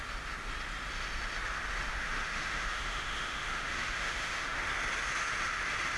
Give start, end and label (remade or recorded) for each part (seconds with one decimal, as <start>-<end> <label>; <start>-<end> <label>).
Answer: 0.0-1.9 recorded; 1.9-4.7 remade; 4.7-6.0 recorded